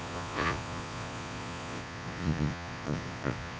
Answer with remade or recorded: remade